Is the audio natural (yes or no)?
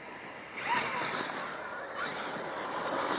yes